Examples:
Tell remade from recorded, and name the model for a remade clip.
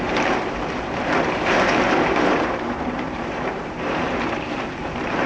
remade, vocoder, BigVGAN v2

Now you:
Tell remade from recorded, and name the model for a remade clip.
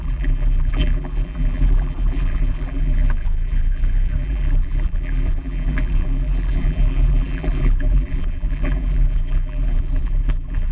remade, vocoder, BigVGAN v2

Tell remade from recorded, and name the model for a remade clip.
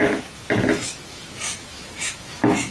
remade, autoencoder, DAC-VAE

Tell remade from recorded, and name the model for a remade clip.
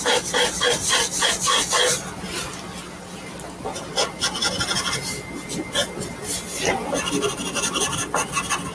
recorded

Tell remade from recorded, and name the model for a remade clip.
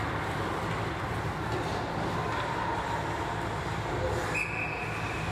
remade, vocoder, BigVGAN v2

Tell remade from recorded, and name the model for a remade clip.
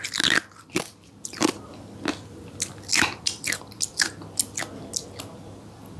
recorded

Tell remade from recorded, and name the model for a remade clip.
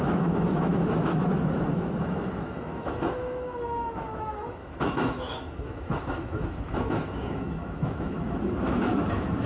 remade, autoencoder, DAC-VAE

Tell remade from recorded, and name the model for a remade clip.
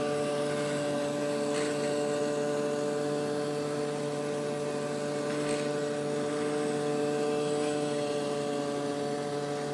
recorded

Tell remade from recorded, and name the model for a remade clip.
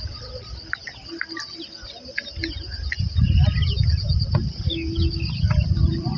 recorded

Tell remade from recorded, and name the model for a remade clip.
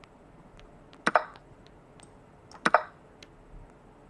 recorded